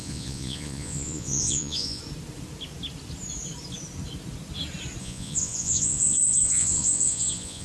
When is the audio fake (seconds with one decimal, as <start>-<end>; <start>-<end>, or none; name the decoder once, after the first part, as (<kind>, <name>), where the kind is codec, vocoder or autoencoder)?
0.0-2.0 (vocoder, Vocos); 5.0-7.6